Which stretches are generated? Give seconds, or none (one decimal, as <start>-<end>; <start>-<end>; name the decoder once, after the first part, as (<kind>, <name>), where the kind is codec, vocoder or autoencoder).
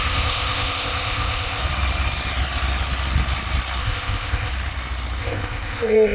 0.0-1.6 (codec, ZipCodec); 3.8-4.5; 5.2-6.1